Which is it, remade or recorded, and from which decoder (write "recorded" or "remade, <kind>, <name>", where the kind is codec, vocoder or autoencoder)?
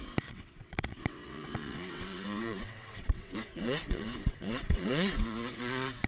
remade, vocoder, WaveNeXt